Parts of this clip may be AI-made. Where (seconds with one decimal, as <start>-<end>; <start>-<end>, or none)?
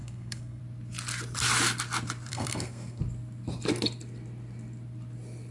0.0-0.6; 2.3-3.0